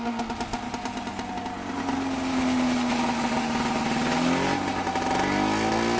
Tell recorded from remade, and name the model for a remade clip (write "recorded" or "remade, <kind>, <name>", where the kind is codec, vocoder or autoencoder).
recorded